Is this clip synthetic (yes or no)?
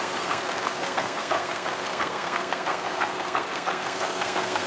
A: yes